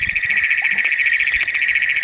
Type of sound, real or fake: real